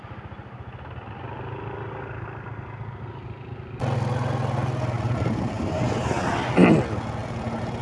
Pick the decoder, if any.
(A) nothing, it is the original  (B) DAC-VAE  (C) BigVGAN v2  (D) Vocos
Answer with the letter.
A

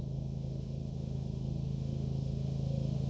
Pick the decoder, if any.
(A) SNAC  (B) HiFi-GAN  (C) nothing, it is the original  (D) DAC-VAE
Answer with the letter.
D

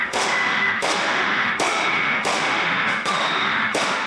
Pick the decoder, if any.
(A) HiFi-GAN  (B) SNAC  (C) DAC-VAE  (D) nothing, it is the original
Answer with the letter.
C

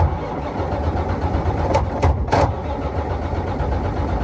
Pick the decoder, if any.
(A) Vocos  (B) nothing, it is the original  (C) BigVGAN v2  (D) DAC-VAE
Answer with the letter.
B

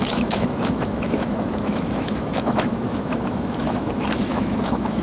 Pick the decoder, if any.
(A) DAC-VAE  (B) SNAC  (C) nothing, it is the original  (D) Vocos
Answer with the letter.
A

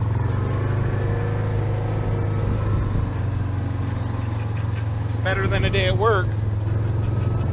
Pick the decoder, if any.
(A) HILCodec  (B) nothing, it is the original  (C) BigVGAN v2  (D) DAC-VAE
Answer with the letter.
B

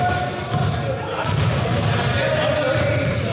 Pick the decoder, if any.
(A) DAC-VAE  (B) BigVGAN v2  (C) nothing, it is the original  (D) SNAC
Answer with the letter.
C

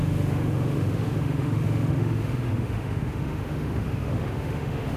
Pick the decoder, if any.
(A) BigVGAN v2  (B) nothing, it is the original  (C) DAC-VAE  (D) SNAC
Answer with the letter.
C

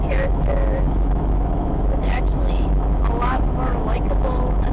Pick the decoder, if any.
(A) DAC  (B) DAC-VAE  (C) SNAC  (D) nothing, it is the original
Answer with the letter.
B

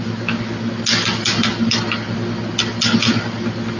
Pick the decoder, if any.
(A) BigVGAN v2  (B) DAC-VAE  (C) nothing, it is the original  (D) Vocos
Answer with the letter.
C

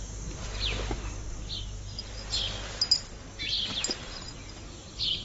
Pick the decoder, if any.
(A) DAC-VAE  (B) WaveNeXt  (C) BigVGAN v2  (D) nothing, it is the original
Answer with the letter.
D